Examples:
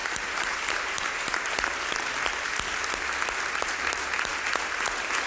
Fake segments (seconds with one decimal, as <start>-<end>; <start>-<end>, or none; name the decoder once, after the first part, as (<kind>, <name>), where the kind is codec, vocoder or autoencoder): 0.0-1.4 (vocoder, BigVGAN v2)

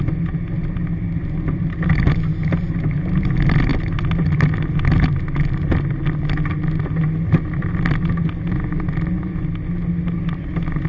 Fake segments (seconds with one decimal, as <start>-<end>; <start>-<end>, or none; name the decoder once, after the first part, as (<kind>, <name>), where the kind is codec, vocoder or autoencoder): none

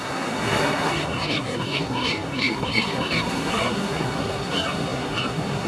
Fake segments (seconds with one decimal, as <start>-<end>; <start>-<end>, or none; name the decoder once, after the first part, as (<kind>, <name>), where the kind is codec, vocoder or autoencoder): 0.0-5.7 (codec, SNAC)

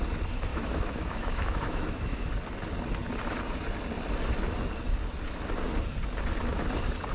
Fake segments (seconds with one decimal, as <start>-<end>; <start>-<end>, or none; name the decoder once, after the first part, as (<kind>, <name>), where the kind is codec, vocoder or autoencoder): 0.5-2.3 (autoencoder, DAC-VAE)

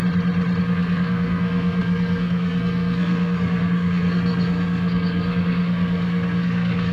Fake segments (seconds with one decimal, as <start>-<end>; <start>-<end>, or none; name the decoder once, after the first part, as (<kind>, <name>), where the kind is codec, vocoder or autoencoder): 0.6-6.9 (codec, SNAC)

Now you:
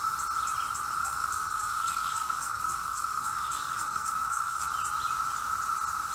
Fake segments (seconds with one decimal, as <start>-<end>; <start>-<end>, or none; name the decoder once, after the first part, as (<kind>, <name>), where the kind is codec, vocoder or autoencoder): 1.0-4.7 (codec, SNAC)

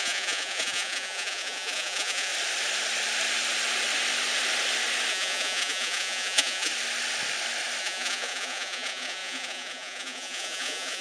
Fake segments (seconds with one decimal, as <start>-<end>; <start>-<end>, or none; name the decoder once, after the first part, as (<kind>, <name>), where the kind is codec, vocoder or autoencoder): 0.0-2.3 (vocoder, Vocos); 5.1-6.7; 7.8-11.0